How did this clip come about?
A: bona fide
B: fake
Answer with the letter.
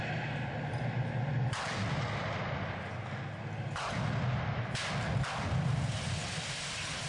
A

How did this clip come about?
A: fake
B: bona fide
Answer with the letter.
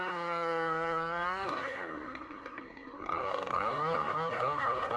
A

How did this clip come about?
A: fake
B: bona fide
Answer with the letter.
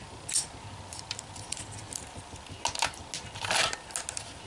B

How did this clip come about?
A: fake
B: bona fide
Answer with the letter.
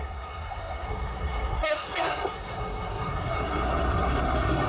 A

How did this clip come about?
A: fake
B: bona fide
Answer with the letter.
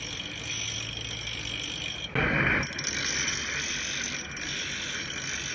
B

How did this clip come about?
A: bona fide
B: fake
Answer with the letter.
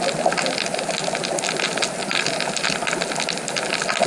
A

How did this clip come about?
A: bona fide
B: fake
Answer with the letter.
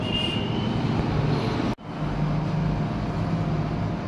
A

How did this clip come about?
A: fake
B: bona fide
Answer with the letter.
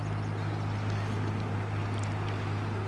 B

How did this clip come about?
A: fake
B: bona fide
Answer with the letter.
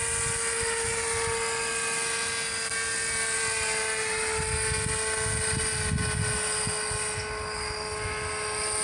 B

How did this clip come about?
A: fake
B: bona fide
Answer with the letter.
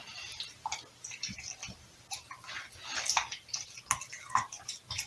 B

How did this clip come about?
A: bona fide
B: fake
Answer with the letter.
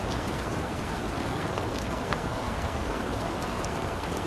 B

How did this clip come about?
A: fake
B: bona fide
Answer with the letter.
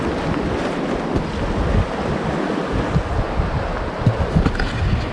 B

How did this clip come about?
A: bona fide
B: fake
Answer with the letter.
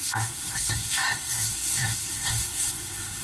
B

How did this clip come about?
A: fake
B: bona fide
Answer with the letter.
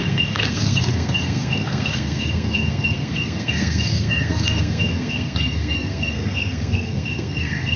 A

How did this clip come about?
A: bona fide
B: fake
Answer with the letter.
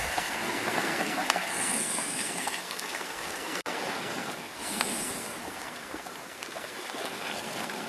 B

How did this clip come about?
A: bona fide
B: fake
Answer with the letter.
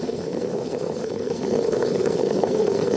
B